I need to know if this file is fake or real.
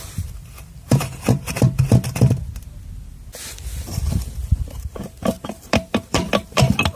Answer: fake